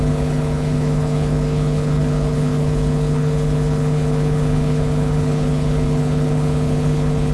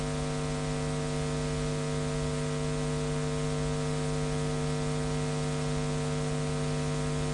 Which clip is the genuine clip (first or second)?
second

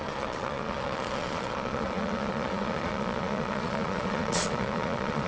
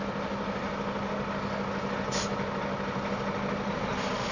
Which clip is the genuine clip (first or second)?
second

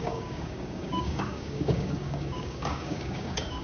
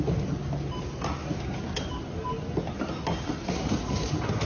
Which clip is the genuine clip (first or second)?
second